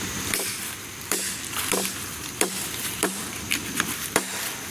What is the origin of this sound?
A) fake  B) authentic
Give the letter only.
A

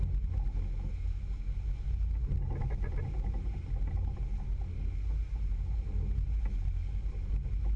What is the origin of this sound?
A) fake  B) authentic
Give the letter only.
B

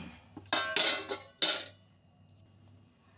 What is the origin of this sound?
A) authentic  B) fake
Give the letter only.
A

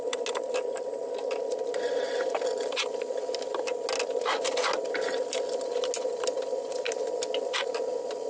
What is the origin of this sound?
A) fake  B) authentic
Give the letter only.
B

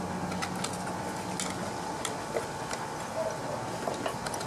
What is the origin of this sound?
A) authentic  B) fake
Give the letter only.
A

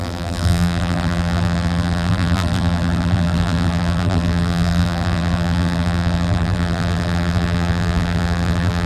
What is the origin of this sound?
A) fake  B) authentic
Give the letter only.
A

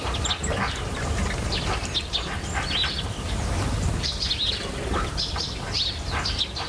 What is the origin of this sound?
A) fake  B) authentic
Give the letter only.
B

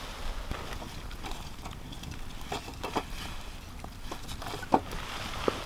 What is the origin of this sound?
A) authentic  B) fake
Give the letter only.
A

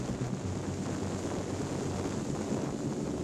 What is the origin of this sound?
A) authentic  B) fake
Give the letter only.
A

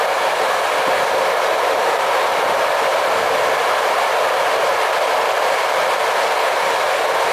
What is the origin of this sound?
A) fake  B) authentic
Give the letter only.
B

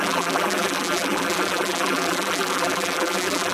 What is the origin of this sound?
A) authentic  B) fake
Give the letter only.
B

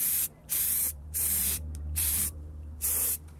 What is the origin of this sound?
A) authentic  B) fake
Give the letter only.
B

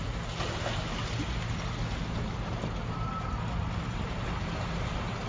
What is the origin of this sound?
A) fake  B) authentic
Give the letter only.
B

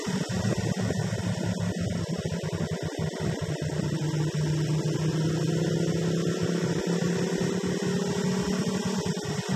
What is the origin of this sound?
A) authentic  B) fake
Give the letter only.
A